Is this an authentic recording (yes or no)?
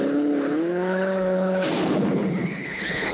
no